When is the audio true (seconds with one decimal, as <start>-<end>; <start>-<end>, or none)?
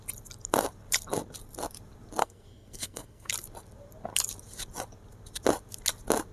0.0-2.2; 3.3-6.3